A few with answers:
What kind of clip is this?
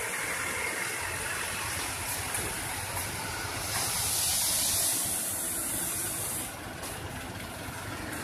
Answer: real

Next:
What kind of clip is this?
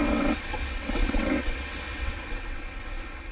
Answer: fake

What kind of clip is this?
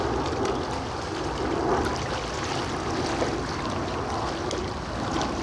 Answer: real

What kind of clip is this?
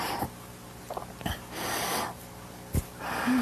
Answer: real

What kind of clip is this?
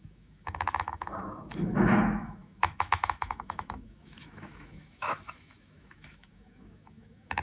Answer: fake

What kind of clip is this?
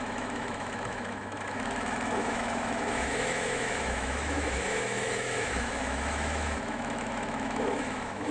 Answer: fake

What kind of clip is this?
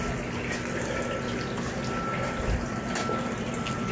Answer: real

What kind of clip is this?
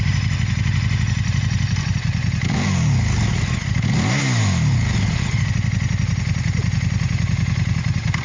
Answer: real